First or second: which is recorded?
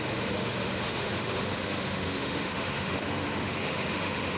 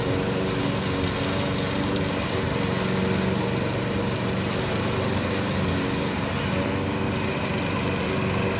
second